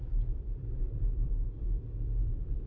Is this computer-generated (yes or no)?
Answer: yes